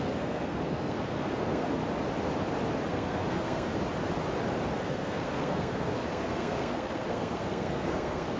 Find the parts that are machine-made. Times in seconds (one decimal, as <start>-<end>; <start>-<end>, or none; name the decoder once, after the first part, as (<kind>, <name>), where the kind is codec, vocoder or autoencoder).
0.0-1.8 (codec, SNAC); 2.9-3.7; 4.7-8.4